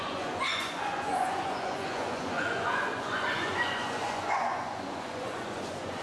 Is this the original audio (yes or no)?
no